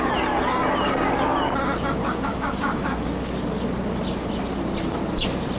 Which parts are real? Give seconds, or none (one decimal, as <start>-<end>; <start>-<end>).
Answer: 0.0-2.0; 3.3-5.6